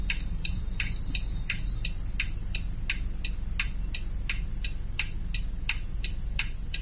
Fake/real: real